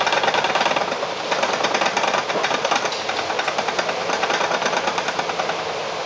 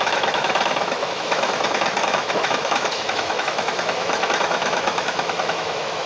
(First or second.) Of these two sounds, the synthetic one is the second